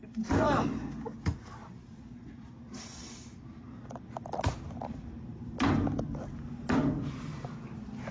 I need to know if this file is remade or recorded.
recorded